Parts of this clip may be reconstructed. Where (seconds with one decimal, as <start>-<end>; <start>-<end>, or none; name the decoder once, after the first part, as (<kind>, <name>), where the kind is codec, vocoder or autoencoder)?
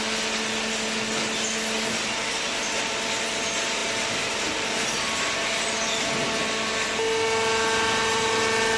none